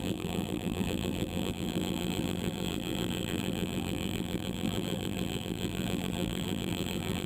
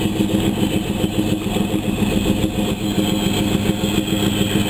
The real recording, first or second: second